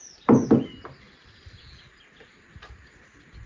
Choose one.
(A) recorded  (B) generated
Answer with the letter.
A